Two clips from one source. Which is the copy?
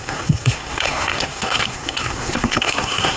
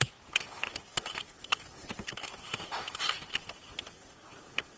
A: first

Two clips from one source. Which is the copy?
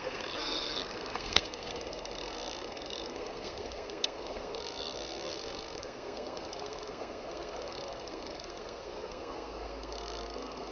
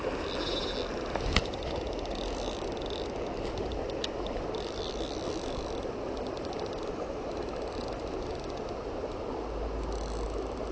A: first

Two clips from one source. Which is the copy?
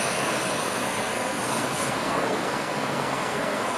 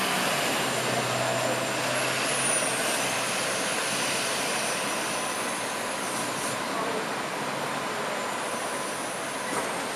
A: first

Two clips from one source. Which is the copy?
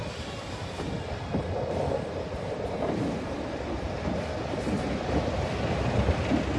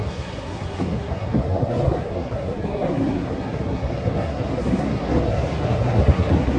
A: second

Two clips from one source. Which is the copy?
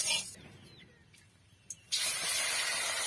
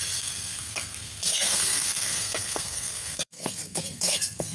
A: second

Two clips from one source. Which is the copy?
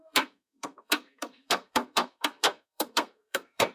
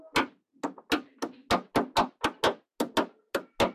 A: first